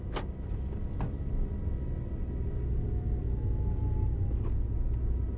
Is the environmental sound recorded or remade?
recorded